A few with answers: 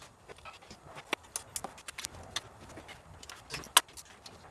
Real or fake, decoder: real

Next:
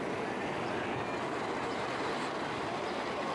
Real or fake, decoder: real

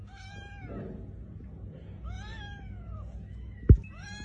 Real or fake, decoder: real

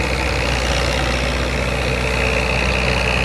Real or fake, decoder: real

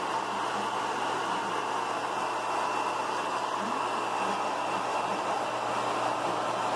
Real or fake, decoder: real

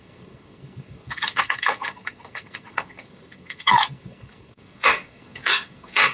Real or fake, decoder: fake, codec, SNAC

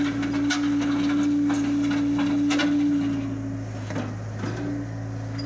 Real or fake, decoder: real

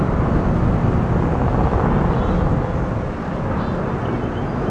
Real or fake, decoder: real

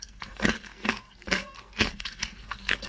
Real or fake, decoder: fake, codec, SNAC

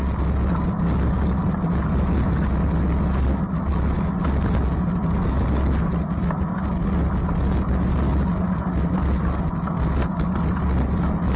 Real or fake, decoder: real